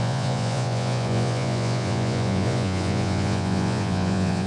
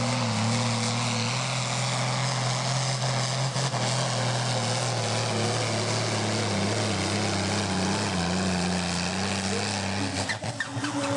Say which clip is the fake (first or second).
first